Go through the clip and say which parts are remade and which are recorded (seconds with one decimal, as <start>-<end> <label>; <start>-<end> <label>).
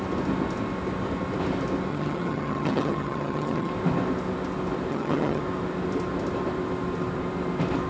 0.0-1.9 recorded; 1.9-3.7 remade; 3.7-4.9 recorded; 4.9-5.4 remade; 5.4-7.9 recorded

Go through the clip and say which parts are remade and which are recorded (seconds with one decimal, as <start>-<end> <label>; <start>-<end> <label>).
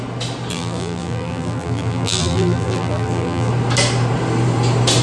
0.0-0.5 recorded; 0.5-3.5 remade; 3.5-5.0 recorded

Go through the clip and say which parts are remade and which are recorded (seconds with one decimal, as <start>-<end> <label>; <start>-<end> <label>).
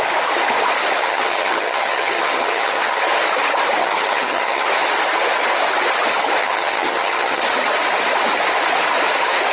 0.0-1.0 recorded; 1.0-3.0 remade; 3.0-3.8 recorded; 3.8-4.7 remade; 4.7-6.4 recorded; 6.4-7.4 remade; 7.4-9.5 recorded